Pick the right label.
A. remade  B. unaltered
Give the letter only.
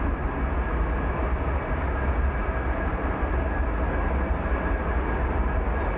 B